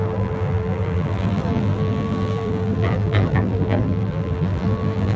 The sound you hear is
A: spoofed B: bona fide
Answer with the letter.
A